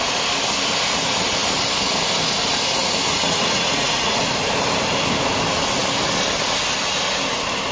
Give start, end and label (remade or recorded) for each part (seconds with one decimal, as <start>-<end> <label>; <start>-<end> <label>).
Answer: 0.0-3.1 recorded; 3.1-4.2 remade; 4.2-7.7 recorded